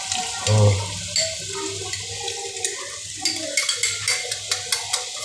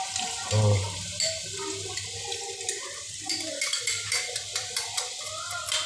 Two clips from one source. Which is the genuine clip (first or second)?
first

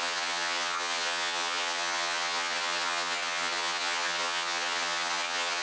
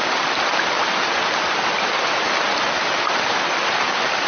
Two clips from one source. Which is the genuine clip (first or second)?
second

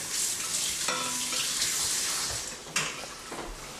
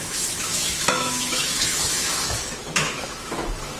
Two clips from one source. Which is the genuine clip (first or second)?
first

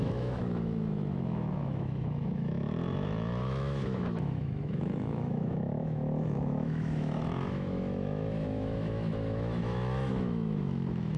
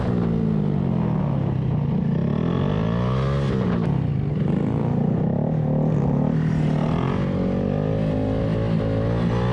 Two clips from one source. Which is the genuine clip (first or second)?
second